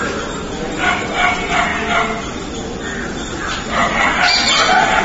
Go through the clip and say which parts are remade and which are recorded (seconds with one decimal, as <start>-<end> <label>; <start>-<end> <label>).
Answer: 0.0-5.0 recorded